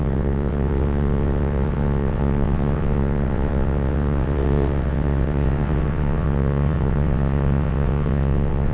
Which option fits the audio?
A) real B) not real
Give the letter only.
B